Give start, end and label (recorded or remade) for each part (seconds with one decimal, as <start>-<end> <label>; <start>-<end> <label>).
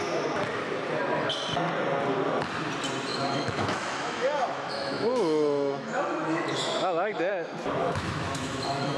0.0-3.1 recorded; 3.1-7.3 remade; 7.3-7.8 recorded; 7.8-9.0 remade